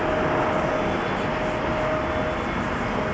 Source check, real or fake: real